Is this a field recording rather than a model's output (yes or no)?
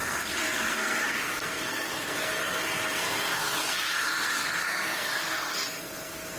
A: no